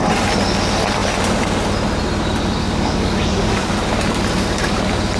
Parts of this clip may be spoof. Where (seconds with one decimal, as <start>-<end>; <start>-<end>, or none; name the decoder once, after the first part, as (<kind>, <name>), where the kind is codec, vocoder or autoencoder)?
2.6-3.7 (codec, DAC)